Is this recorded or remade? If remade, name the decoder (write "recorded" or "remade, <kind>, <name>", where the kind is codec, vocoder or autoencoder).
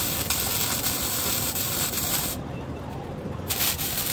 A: remade, vocoder, BigVGAN v2